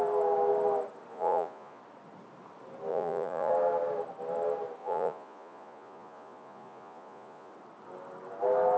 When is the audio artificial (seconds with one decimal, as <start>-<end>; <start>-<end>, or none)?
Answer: 1.1-1.8; 2.9-3.5; 4.8-7.5